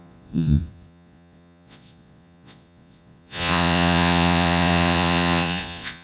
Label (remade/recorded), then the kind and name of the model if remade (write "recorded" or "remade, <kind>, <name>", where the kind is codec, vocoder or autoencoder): remade, vocoder, Vocos